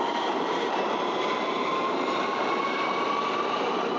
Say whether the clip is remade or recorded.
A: remade